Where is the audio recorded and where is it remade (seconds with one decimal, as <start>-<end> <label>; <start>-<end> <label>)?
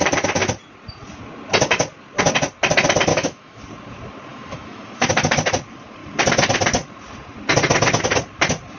0.0-3.1 recorded; 3.1-3.6 remade; 3.6-4.3 recorded; 4.3-5.1 remade; 5.1-8.8 recorded